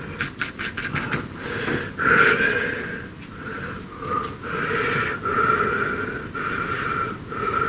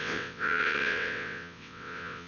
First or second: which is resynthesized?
second